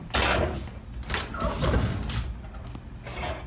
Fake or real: real